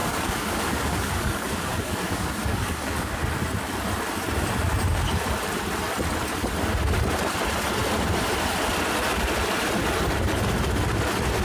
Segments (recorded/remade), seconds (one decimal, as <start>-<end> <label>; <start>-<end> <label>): 0.0-3.2 remade; 3.2-11.4 recorded